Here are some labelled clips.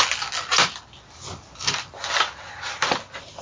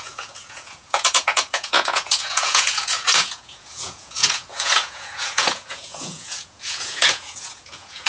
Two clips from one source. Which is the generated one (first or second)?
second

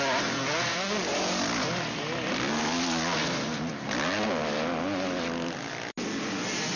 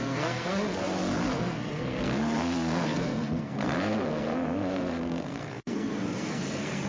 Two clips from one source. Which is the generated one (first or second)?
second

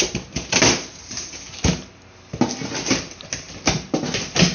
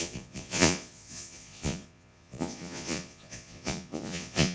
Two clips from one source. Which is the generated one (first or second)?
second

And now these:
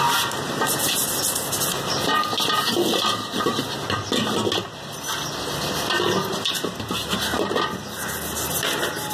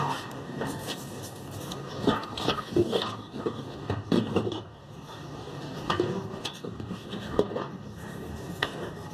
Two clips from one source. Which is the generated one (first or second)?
second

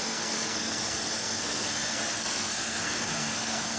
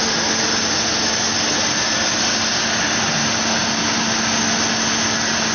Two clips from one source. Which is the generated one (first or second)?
first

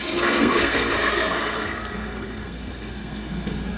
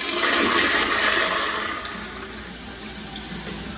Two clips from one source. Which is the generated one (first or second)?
first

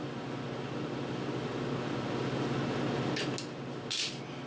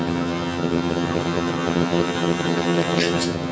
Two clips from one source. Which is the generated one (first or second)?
second